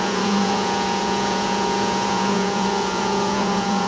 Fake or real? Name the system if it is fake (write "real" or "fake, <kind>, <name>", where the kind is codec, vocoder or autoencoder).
fake, vocoder, Vocos